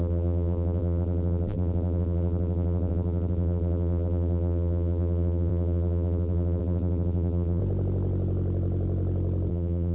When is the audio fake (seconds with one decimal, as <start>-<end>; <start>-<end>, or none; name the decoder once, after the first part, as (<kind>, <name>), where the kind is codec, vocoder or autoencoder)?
0.0-7.6 (vocoder, BigVGAN v2); 9.5-9.9